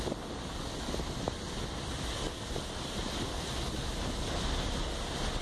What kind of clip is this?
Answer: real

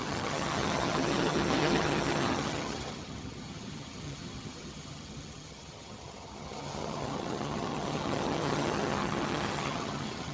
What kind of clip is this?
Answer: fake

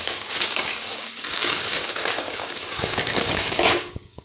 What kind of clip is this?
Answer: fake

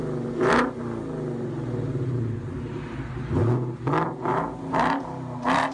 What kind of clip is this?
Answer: real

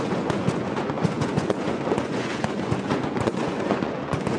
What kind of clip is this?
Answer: fake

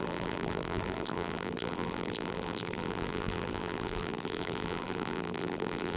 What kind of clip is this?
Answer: fake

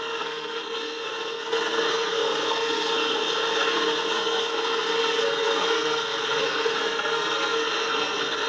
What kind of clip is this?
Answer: fake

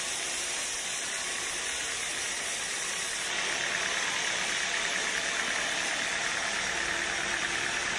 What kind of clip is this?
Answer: fake